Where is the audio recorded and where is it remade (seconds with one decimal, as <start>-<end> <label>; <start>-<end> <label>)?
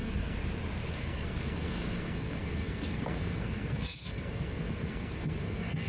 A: 0.0-0.4 remade; 0.4-0.9 recorded; 0.9-5.9 remade